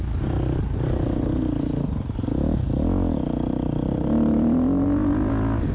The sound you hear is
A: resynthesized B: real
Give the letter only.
B